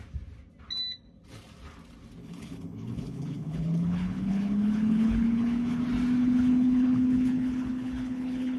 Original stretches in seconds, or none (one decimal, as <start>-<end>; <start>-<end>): 0.0-2.2; 5.8-6.2